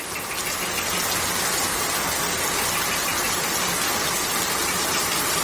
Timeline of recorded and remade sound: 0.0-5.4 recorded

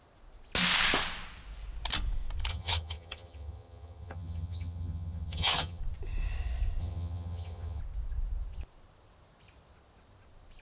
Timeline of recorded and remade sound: 0.0-2.5 recorded; 2.5-5.8 remade; 5.8-6.8 recorded; 6.8-7.8 remade; 7.8-10.6 recorded

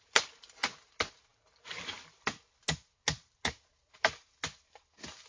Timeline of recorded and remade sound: 0.0-5.3 recorded

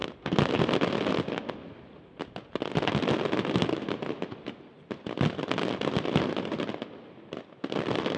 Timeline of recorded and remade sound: 0.0-8.2 recorded

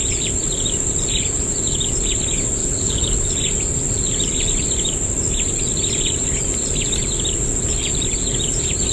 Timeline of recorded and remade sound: 0.0-2.6 recorded; 2.6-3.3 remade; 3.3-8.9 recorded

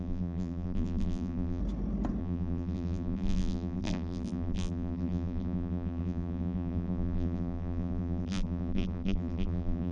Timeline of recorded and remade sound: 0.0-1.6 remade; 1.6-2.2 recorded; 2.2-9.9 remade

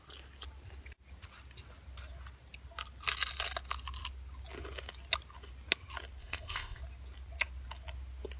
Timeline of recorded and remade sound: 0.0-6.2 recorded; 6.2-6.8 remade; 6.8-8.4 recorded